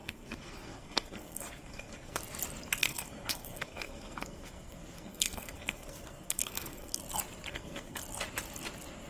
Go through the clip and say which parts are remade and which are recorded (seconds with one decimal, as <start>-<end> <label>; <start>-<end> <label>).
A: 0.0-2.2 remade; 2.2-2.8 recorded; 2.8-7.0 remade; 7.0-7.5 recorded; 7.5-8.0 remade; 8.0-9.1 recorded